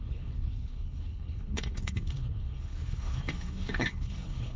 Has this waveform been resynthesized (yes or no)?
yes